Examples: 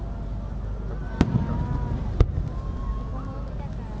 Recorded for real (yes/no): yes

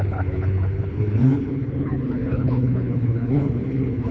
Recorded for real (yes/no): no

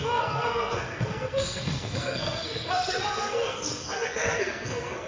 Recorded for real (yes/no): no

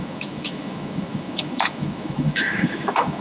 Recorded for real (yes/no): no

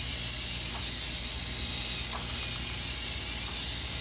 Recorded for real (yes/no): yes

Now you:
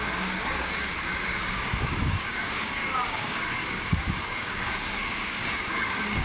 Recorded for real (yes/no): no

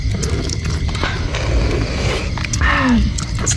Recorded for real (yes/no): yes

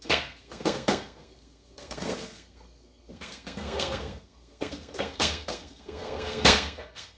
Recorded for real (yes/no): no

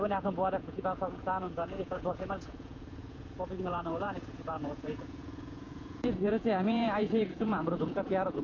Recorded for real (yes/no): no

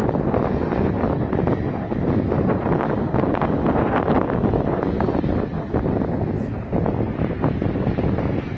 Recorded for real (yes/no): yes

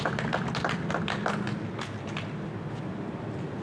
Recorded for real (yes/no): yes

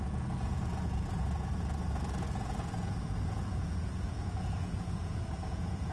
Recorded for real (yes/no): no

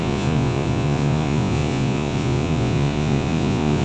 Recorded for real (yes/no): no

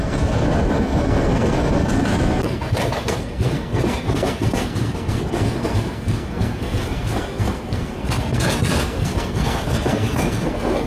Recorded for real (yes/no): no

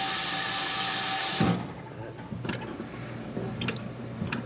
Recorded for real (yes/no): yes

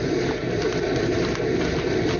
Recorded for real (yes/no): yes